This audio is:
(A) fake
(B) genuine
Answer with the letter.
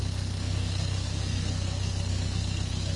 A